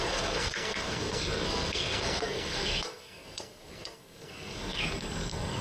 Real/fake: fake